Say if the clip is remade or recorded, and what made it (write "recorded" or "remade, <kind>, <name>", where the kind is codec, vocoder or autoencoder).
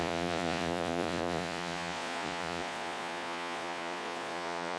remade, vocoder, Vocos